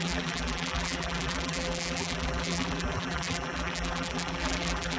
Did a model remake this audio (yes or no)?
yes